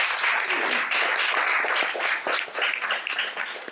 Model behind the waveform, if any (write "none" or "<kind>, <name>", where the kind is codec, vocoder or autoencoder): none